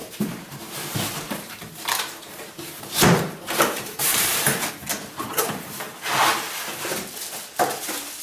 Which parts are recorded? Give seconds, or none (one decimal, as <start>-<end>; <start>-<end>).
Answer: 4.7-8.2